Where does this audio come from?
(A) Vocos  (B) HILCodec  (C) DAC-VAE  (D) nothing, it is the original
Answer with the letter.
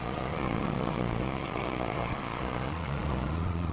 A